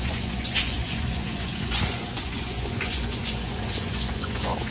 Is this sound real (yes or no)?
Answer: no